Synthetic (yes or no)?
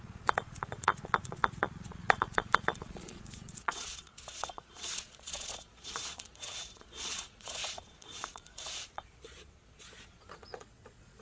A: yes